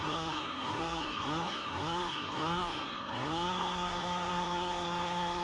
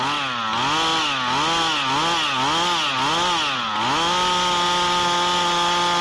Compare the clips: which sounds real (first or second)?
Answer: second